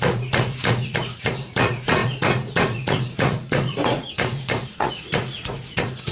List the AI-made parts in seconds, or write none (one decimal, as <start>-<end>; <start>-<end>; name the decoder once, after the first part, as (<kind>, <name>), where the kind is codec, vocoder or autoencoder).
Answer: 0.0-6.1 (vocoder, Vocos)